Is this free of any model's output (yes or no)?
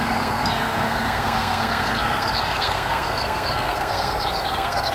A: no